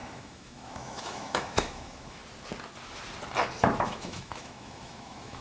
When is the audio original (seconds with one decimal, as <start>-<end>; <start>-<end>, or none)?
2.2-3.8